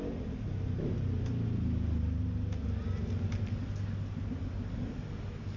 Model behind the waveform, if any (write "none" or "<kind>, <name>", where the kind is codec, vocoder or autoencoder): none